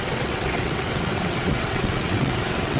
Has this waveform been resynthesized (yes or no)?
yes